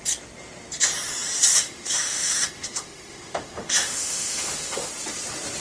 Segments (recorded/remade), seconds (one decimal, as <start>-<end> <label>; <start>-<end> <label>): 0.0-1.5 recorded; 1.5-4.9 remade; 4.9-5.6 recorded